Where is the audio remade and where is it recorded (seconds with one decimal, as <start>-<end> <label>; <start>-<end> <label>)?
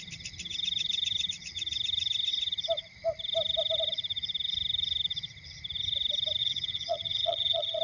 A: 0.0-6.4 recorded; 6.4-7.8 remade